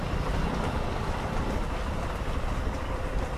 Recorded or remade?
recorded